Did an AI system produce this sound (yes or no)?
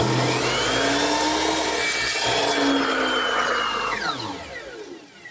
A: no